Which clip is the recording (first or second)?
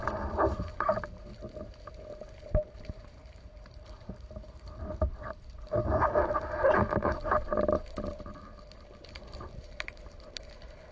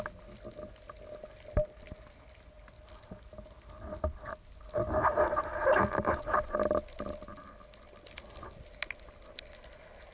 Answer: second